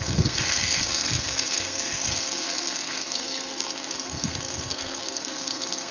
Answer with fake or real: fake